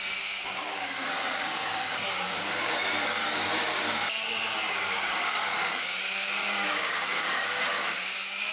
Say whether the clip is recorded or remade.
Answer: remade